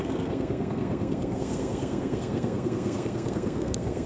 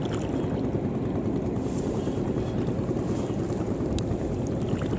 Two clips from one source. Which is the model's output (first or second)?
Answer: first